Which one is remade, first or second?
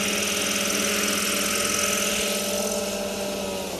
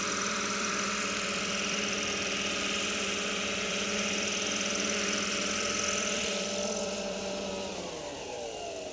second